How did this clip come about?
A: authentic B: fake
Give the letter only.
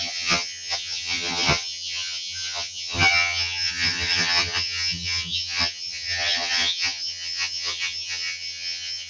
B